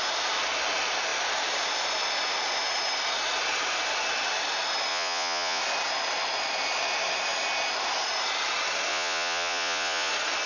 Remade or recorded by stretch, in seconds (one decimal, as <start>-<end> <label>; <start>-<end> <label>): 0.0-4.9 recorded; 4.9-5.6 remade; 5.6-8.9 recorded; 8.9-10.1 remade; 10.1-10.5 recorded